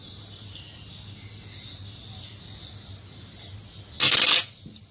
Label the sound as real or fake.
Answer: real